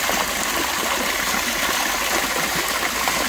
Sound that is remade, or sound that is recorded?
recorded